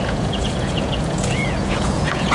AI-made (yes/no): yes